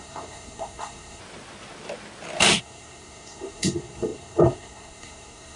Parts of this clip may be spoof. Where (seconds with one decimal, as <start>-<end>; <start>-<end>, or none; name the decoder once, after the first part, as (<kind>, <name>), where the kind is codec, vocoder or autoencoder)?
0.0-1.2 (codec, SNAC); 2.6-5.6